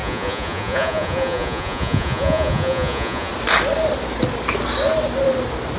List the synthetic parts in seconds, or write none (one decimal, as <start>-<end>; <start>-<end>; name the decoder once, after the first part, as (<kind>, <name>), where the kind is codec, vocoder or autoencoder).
0.0-3.3 (vocoder, Vocos)